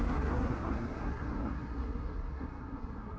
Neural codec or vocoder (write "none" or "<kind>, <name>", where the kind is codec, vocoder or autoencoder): codec, SNAC